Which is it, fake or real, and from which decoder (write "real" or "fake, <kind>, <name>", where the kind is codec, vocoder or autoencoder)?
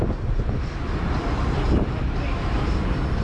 fake, vocoder, BigVGAN v2